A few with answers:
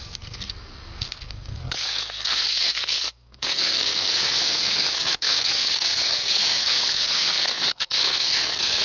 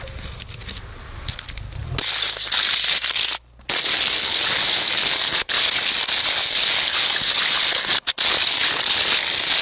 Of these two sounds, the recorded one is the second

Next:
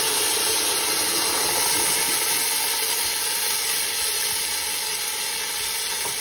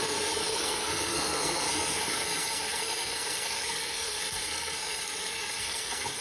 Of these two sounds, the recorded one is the first